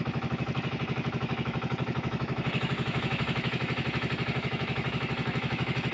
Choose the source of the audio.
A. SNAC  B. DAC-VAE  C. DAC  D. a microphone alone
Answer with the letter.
B